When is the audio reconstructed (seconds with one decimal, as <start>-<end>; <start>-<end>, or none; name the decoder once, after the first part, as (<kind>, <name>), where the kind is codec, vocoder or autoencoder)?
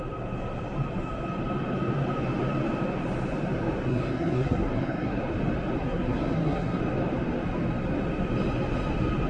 3.9-5.2 (codec, SNAC); 5.8-6.8